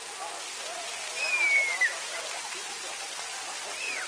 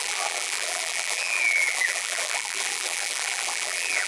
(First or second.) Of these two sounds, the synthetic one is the second